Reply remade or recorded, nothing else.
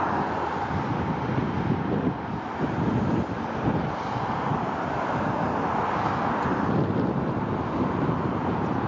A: recorded